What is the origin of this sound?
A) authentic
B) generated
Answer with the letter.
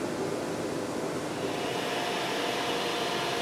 A